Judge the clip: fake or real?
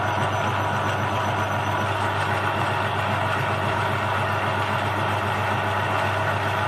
real